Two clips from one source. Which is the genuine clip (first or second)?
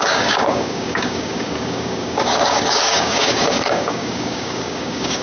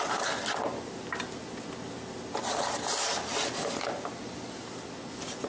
second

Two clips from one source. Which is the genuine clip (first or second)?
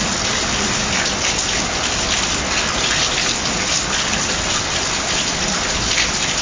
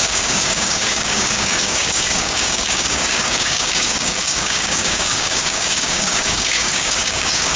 first